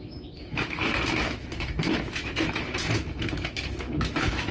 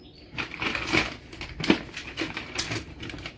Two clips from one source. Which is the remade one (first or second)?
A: first